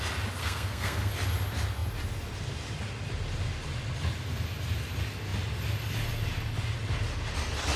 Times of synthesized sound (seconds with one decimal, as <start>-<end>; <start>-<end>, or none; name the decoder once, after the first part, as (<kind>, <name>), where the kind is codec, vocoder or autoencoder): 0.4-1.1 (codec, SNAC)